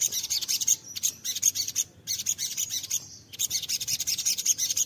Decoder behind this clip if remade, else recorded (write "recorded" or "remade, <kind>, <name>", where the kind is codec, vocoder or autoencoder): recorded